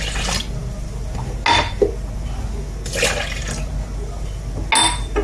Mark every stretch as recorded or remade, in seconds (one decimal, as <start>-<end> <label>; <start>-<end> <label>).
0.0-5.2 recorded